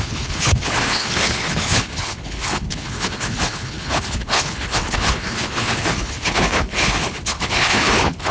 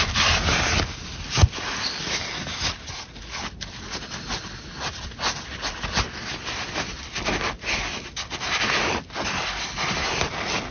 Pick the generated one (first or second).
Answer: first